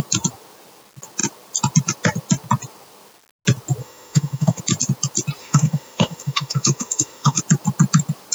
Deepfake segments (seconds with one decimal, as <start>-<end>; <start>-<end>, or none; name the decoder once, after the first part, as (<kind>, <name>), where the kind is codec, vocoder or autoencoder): 3.8-4.6 (autoencoder, DAC-VAE); 5.4-7.4